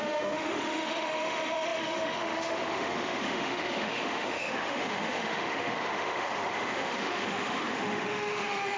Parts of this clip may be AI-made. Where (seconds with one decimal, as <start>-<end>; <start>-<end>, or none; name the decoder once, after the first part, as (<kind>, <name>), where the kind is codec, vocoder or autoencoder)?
0.0-8.8 (autoencoder, DAC-VAE)